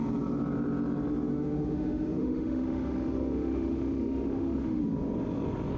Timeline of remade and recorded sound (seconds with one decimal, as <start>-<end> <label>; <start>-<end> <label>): 0.0-1.3 recorded; 1.3-4.8 remade; 4.8-5.8 recorded